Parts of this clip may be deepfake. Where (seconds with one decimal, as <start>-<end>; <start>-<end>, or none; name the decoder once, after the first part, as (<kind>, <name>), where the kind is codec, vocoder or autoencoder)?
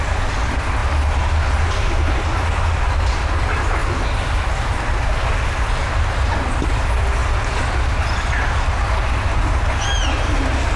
none